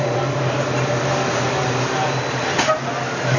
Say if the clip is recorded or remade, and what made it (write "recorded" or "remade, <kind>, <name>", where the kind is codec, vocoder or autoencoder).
recorded